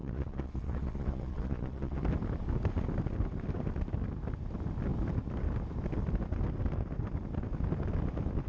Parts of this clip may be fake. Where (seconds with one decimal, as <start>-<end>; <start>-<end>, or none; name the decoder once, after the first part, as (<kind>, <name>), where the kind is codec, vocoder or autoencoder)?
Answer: 0.0-2.0 (vocoder, Vocos)